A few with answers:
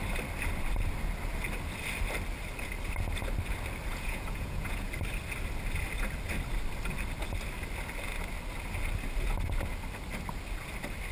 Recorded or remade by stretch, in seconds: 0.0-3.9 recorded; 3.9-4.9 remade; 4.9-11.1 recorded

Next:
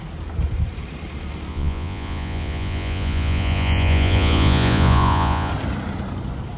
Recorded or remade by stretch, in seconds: 0.0-1.5 recorded; 1.5-5.5 remade; 5.5-6.6 recorded